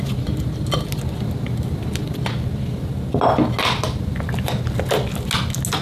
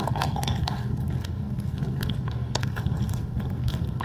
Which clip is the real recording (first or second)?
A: first